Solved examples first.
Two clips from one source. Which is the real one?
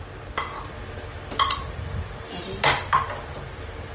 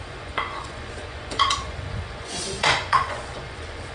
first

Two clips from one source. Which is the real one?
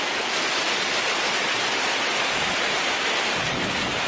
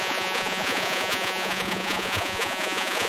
first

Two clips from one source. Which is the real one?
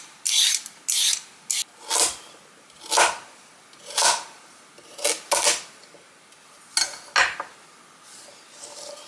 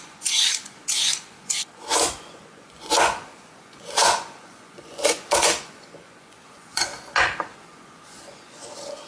first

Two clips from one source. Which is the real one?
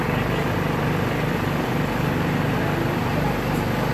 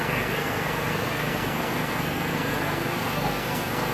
first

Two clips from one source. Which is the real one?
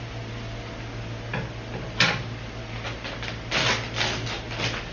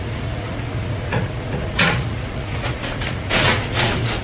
first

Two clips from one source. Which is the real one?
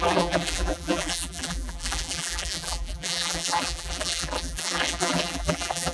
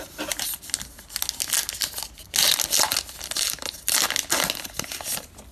second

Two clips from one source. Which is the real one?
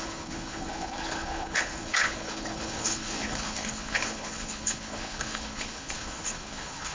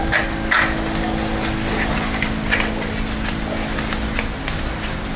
second